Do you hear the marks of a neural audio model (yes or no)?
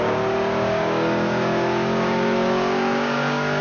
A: yes